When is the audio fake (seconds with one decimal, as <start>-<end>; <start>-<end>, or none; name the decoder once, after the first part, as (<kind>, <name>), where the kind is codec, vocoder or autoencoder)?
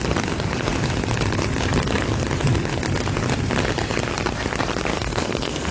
4.9-5.7 (codec, SNAC)